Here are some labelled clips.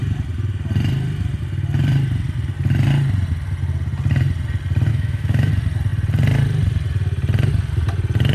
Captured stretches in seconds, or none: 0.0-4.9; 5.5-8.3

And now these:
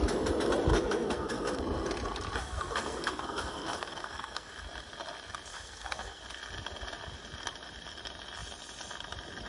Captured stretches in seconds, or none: 0.0-0.7; 1.6-2.4; 4.5-5.5; 6.2-9.5

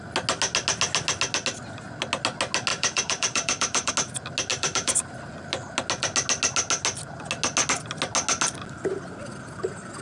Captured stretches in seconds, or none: 0.0-2.7; 3.9-4.5; 5.3-10.0

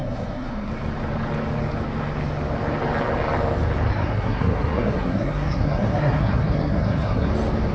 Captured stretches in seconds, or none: 0.7-3.9; 7.3-7.7

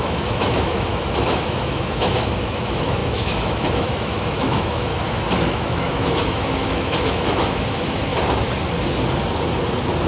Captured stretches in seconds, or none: 4.9-5.4; 8.1-10.1

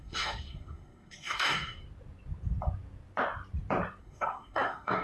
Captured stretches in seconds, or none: 1.8-4.0

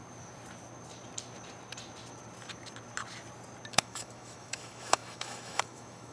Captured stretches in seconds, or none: 0.0-3.7

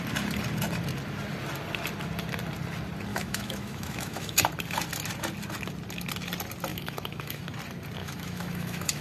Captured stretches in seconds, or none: 0.0-3.1; 4.4-6.7; 7.4-8.0